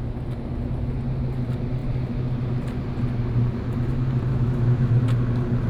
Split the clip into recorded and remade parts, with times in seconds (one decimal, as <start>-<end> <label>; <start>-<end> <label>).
0.0-4.3 recorded; 4.3-4.9 remade; 4.9-5.7 recorded